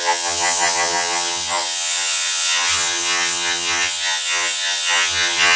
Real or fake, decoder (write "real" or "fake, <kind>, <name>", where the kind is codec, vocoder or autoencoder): fake, vocoder, HiFi-GAN